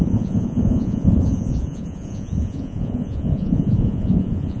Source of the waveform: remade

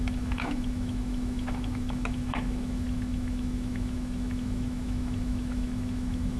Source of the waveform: remade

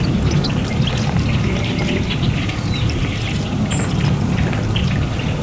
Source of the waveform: recorded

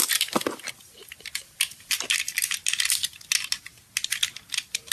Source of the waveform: recorded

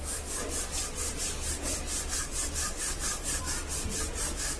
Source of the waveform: recorded